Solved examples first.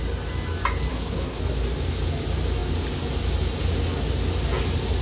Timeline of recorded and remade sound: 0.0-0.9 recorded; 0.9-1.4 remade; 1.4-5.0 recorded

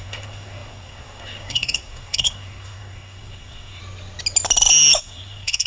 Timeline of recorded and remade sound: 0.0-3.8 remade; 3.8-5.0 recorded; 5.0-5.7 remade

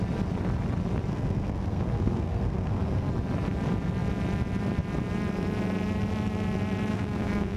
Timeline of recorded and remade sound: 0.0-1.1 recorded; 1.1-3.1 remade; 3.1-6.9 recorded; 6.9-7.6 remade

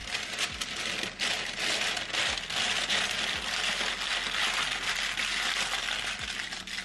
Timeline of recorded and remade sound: 0.0-6.8 recorded